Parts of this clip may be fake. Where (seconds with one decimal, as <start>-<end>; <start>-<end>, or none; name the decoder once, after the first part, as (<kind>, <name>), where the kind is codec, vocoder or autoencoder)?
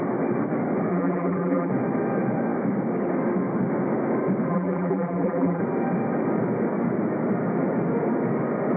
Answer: 0.9-1.7 (vocoder, BigVGAN v2); 4.5-5.6